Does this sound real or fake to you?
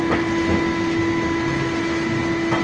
real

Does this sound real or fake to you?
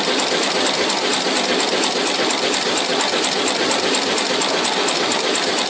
real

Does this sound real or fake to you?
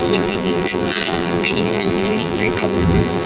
fake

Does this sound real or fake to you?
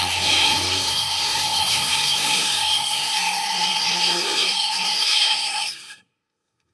fake